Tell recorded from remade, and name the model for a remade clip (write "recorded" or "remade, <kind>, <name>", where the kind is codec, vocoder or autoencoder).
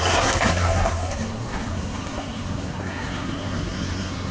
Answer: remade, codec, SNAC